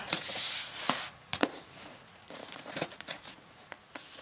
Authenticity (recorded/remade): remade